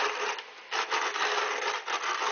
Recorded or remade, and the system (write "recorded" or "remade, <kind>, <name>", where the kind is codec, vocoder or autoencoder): recorded